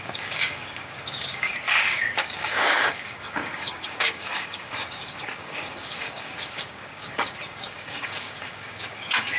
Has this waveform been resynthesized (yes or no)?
yes